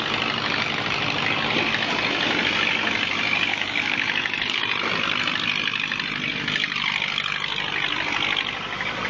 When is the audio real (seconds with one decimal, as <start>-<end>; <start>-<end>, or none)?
0.0-3.5; 4.6-9.1